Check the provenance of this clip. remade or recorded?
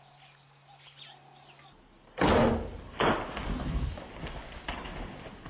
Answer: recorded